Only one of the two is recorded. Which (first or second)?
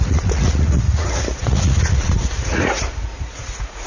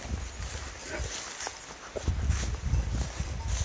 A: second